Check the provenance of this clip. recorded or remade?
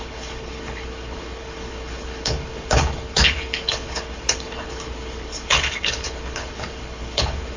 remade